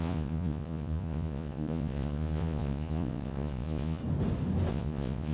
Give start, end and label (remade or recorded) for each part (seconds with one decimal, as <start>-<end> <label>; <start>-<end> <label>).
0.0-4.0 remade; 4.0-4.7 recorded; 4.7-5.3 remade